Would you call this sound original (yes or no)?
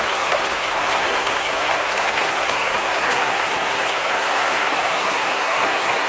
no